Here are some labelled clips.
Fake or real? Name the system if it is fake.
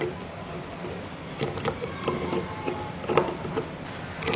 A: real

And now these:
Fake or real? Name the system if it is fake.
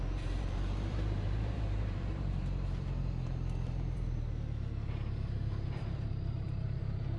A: fake, vocoder, BigVGAN v2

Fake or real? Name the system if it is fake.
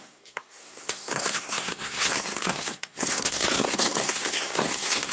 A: fake, codec, SNAC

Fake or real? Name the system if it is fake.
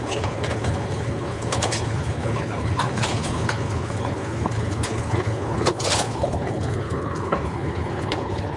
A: fake, codec, HILCodec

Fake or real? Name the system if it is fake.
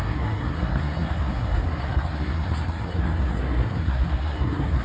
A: fake, codec, SNAC